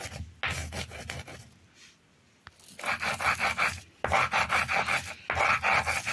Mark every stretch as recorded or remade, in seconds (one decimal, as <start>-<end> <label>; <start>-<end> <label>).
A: 0.0-6.1 recorded